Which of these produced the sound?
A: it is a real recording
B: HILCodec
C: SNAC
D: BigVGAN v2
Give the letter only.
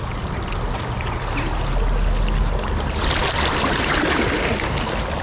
A